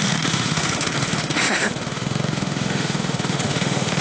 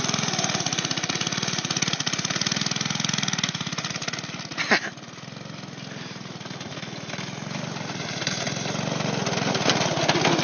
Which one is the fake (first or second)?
first